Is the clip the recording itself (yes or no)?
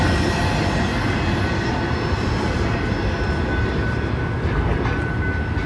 yes